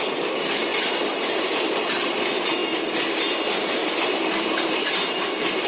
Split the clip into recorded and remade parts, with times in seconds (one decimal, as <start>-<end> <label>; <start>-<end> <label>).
0.0-5.7 recorded